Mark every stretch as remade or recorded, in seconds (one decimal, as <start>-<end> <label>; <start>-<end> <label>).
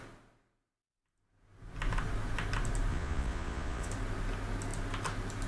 0.0-2.9 recorded; 2.9-3.9 remade; 3.9-5.5 recorded